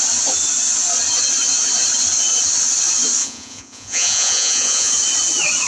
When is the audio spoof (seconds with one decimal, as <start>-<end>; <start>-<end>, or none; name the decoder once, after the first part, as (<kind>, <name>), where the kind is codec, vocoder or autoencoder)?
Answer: 3.2-4.9 (vocoder, Vocos)